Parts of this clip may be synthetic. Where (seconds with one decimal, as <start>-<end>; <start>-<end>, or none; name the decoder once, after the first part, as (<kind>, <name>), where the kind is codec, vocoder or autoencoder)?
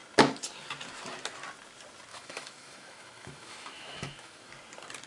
2.1-4.5 (autoencoder, DAC-VAE)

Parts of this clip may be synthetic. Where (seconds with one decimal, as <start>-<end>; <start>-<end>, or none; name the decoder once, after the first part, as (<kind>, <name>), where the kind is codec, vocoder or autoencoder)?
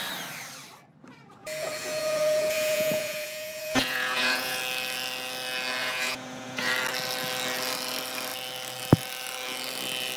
1.4-4.6 (vocoder, Vocos); 5.8-6.7